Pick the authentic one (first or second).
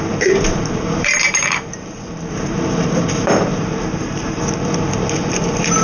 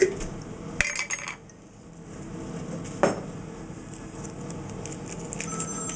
second